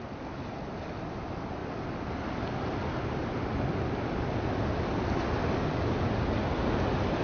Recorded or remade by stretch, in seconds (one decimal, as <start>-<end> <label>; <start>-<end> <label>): 0.0-7.2 recorded